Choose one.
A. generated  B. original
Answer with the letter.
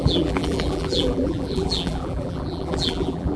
A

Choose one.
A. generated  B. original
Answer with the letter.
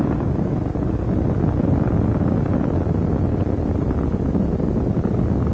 B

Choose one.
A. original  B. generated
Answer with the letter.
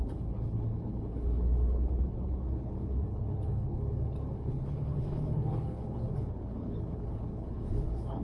B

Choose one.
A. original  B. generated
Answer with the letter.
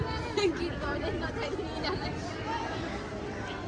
A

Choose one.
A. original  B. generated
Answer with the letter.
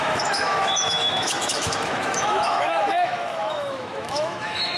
B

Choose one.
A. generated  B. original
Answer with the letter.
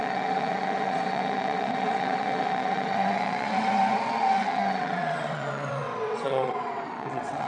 A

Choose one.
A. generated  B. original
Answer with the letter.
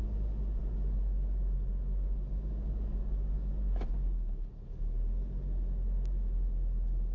B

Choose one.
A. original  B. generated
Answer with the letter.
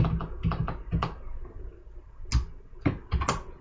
A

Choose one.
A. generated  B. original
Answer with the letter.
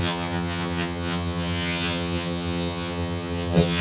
A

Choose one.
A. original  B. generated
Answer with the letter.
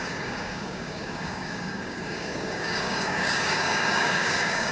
B